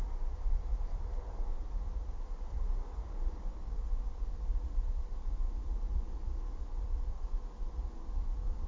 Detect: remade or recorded recorded